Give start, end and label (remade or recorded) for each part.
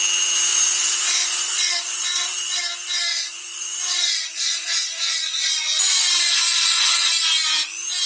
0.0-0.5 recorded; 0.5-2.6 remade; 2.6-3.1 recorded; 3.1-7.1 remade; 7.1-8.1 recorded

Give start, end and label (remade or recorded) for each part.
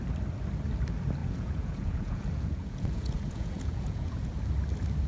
0.0-1.2 recorded; 1.2-4.3 remade; 4.3-5.1 recorded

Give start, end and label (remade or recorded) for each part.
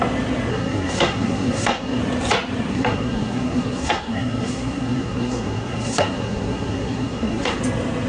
0.0-0.5 recorded; 0.5-2.0 remade; 2.0-2.7 recorded; 2.7-7.6 remade; 7.6-8.1 recorded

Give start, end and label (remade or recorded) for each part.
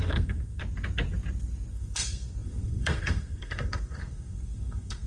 0.0-0.6 remade; 0.6-1.7 recorded; 1.7-5.1 remade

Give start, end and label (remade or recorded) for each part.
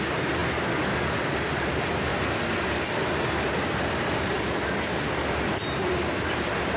0.0-6.8 recorded